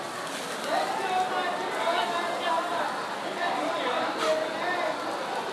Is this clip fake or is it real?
real